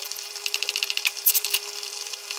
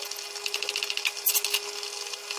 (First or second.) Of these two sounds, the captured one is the second